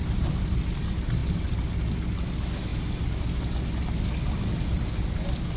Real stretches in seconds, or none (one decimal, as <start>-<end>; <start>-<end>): 0.0-5.6